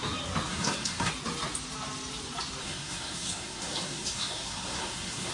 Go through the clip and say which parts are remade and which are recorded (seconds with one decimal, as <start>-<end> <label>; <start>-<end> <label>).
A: 0.0-0.5 recorded; 0.5-1.1 remade; 1.1-2.6 recorded; 2.6-5.3 remade